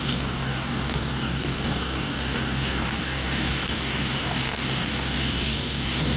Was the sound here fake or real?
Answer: fake